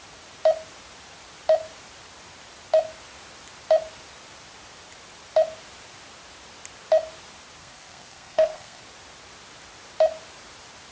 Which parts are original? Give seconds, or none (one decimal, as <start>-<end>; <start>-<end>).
0.0-7.6; 8.8-10.9